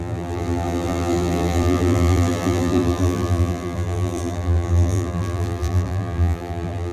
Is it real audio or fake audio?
fake